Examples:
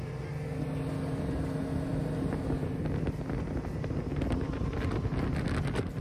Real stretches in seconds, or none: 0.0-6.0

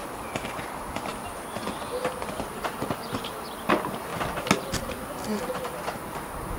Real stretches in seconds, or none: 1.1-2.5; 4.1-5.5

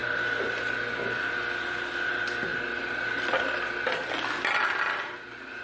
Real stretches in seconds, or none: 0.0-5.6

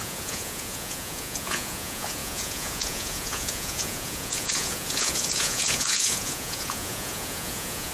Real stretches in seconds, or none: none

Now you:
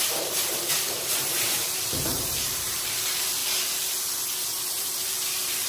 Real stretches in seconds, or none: 3.4-4.7

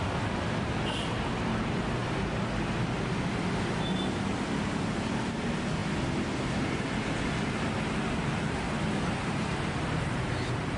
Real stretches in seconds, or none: 0.0-10.8